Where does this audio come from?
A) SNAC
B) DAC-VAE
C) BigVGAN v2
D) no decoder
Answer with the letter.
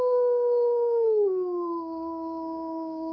A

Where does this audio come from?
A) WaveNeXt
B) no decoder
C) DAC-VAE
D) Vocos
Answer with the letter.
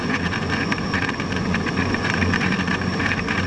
D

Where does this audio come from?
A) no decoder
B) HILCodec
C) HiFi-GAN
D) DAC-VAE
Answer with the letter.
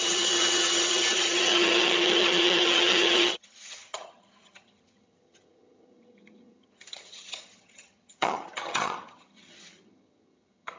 C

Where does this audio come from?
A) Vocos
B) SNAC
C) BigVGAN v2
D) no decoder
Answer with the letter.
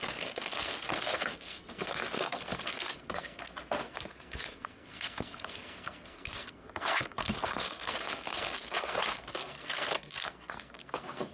B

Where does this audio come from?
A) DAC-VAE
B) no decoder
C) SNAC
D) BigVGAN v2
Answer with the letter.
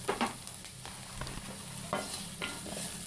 B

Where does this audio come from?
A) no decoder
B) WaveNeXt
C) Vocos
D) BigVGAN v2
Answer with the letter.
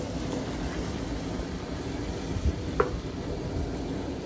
A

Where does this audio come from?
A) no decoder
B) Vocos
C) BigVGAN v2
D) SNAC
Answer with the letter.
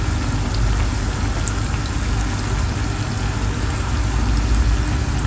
A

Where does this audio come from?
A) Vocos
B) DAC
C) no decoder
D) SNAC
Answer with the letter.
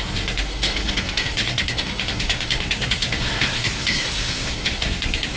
D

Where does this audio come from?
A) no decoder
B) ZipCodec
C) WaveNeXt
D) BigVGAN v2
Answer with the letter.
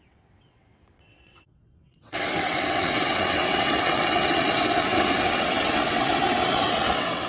C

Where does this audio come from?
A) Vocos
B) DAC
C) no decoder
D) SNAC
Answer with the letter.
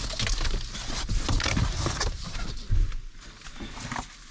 C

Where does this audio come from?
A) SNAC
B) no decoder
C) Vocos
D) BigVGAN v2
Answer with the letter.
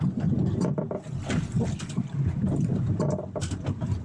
B